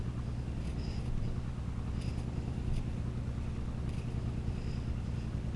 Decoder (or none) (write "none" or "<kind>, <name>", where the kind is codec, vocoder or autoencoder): none